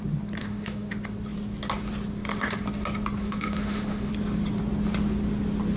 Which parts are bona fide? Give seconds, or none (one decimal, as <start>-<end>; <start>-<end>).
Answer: 0.0-0.4; 0.9-3.2; 4.1-5.8